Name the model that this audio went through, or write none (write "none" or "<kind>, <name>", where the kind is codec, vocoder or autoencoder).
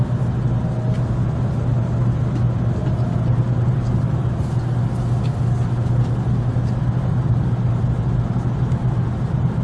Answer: none